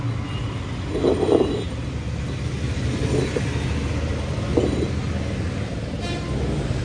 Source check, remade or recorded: recorded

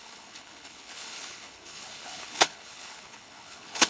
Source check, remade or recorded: remade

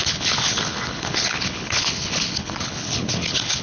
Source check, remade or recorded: remade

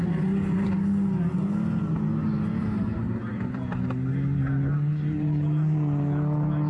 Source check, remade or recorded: recorded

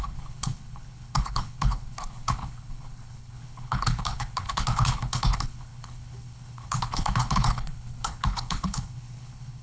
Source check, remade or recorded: remade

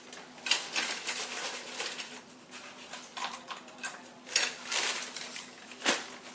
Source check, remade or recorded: recorded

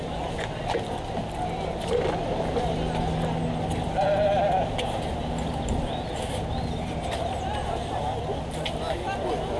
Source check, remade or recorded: recorded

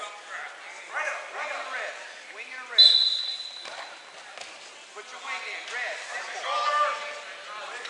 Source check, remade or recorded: recorded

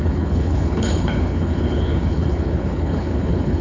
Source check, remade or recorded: remade